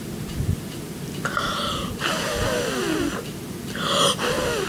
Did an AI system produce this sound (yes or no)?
yes